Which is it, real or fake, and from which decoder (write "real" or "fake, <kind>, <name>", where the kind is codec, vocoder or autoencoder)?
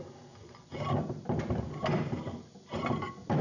real